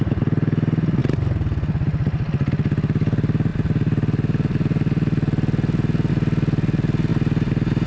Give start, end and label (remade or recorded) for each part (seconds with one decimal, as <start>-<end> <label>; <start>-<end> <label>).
0.0-7.9 recorded